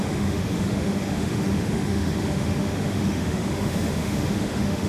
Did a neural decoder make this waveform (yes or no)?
yes